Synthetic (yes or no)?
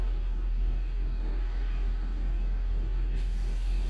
yes